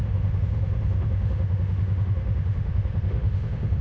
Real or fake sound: fake